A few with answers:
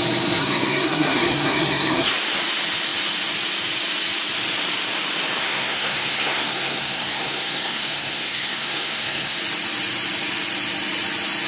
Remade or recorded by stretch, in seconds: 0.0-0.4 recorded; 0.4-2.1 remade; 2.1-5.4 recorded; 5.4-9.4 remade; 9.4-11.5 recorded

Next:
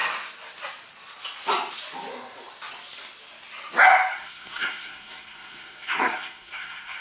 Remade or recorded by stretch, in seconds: 0.0-4.1 recorded; 4.1-7.0 remade

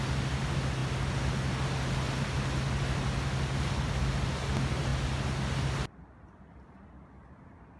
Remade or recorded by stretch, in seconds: 0.0-7.8 recorded

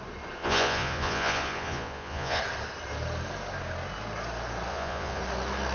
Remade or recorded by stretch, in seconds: 0.0-0.4 recorded; 0.4-2.4 remade; 2.4-4.7 recorded; 4.7-5.2 remade; 5.2-5.7 recorded

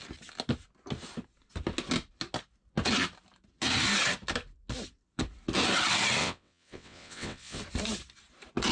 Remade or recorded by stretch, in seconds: 0.0-6.2 recorded; 6.2-7.6 remade; 7.6-8.7 recorded

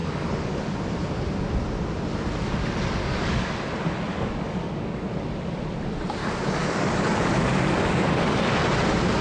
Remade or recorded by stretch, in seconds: 0.0-0.6 remade; 0.6-3.0 recorded; 3.0-3.5 remade; 3.5-4.1 recorded; 4.1-5.0 remade; 5.0-6.2 recorded; 6.2-8.5 remade; 8.5-9.2 recorded

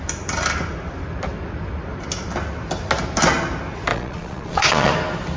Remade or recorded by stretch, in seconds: 0.0-3.9 recorded; 3.9-4.9 remade; 4.9-5.4 recorded